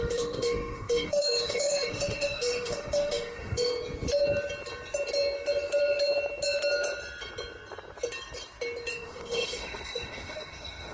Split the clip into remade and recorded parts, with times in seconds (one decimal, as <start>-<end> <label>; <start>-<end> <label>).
0.0-3.7 remade; 3.7-8.9 recorded; 8.9-10.9 remade